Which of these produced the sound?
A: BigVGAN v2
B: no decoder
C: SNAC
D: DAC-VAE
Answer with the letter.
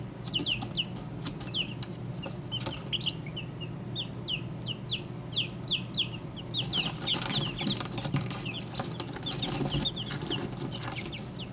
B